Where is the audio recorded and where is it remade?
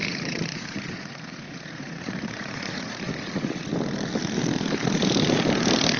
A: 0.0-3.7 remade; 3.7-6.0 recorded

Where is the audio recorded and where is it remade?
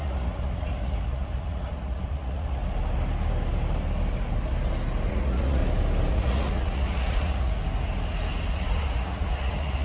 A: 0.0-2.6 remade; 2.6-5.1 recorded; 5.1-5.6 remade; 5.6-6.1 recorded; 6.1-7.6 remade; 7.6-8.5 recorded; 8.5-9.8 remade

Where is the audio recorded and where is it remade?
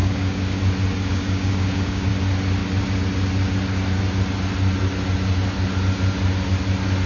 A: 0.0-0.6 remade; 0.6-1.1 recorded; 1.1-2.1 remade; 2.1-7.1 recorded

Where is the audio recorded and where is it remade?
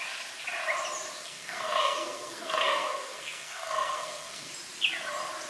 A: 0.0-1.2 recorded; 1.2-4.5 remade; 4.5-5.5 recorded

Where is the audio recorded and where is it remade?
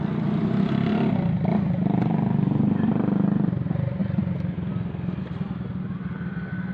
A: 0.0-6.7 recorded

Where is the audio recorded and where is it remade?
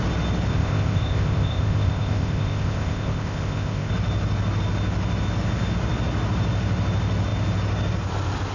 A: 0.0-0.5 recorded; 0.5-3.9 remade; 3.9-8.5 recorded